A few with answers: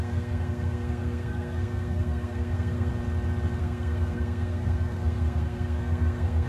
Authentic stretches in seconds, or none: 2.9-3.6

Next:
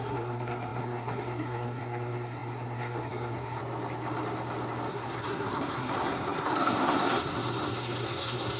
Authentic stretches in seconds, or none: 3.6-4.9

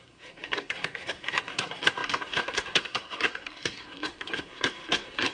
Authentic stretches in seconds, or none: none

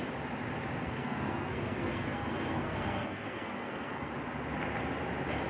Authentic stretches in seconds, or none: 0.0-0.8; 4.1-5.5

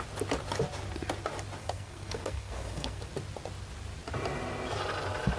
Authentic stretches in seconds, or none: 0.0-1.6; 3.0-5.4

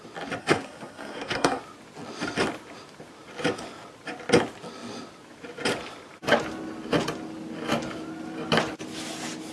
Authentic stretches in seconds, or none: 0.0-0.4; 1.6-9.5